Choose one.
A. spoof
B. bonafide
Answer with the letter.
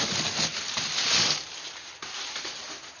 B